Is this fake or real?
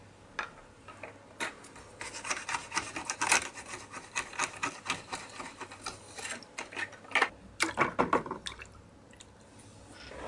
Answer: real